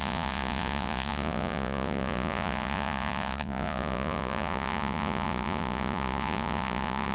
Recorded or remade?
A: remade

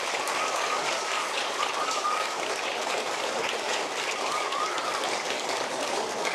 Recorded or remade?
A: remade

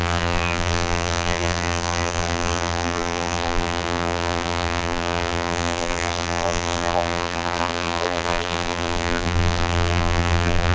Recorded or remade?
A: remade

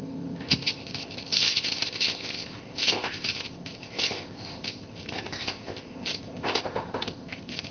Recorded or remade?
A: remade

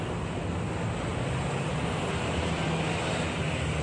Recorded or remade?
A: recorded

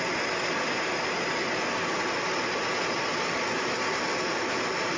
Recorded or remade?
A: recorded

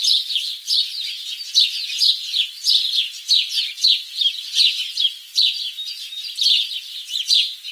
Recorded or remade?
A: recorded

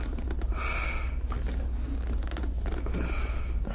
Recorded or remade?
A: recorded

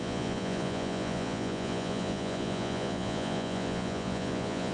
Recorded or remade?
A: remade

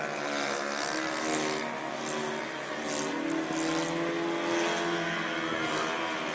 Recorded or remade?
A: recorded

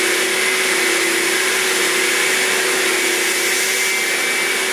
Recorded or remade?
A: recorded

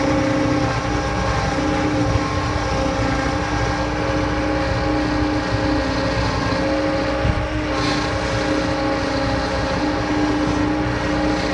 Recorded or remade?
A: recorded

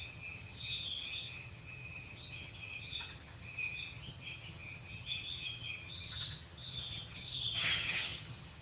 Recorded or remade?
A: remade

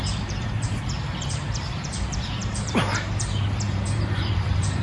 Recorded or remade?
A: remade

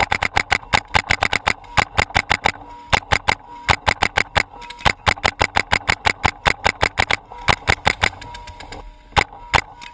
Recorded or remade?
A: recorded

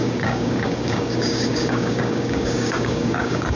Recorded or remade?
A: remade